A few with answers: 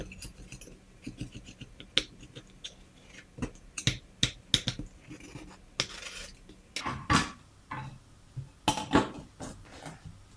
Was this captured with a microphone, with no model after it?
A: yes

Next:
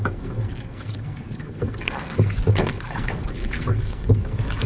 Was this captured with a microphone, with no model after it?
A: no